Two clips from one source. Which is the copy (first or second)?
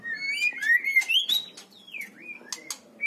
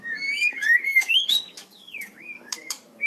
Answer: second